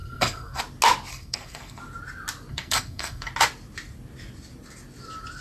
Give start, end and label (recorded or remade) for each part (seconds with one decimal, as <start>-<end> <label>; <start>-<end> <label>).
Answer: 0.0-0.6 remade; 0.6-1.1 recorded; 1.1-1.8 remade; 1.8-2.5 recorded; 2.5-3.3 remade; 3.3-5.4 recorded